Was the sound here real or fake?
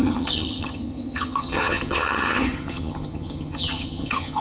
fake